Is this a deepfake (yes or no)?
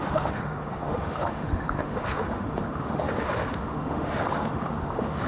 yes